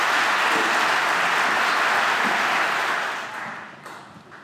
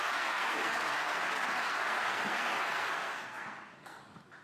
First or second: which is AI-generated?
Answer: second